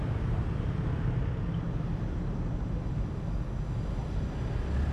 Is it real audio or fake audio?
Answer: real